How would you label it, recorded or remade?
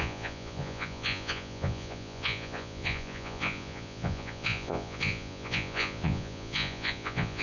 remade